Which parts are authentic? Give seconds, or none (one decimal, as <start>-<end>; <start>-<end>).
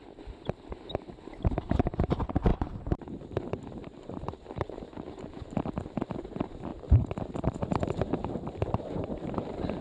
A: none